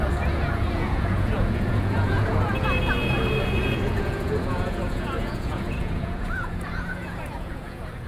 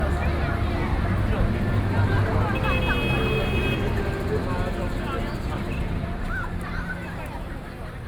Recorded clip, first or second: second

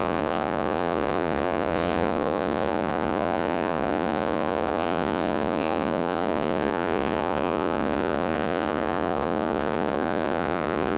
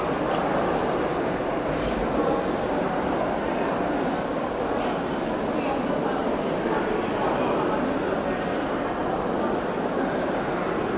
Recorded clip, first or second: second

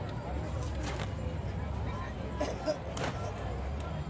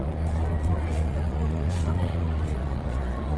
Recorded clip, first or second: first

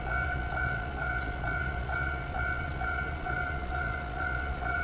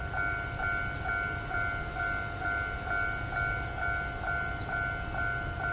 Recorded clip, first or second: second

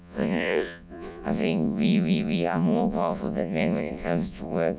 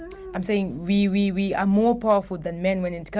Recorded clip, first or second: second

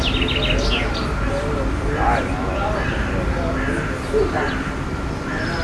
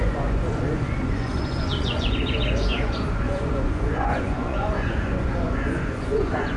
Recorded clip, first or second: first